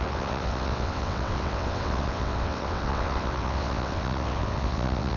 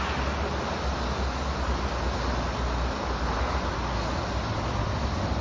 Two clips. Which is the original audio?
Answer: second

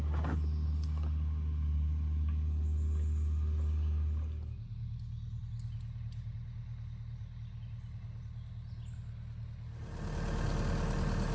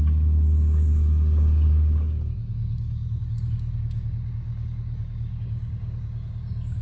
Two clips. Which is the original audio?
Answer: first